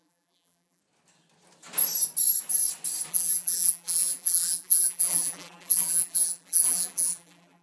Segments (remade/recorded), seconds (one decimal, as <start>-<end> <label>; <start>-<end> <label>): 0.0-0.8 remade; 0.8-3.1 recorded; 3.1-7.6 remade